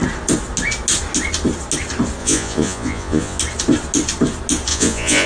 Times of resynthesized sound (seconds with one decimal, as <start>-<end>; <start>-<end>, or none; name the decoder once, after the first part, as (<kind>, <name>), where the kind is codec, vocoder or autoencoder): 2.2-3.4 (vocoder, Vocos); 4.7-5.3